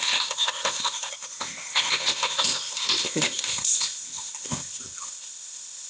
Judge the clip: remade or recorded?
remade